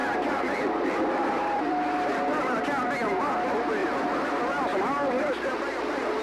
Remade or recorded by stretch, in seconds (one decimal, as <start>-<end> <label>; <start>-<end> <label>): 0.0-2.6 remade; 2.6-3.8 recorded; 3.8-4.3 remade; 4.3-6.2 recorded